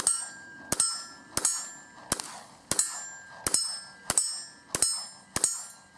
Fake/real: real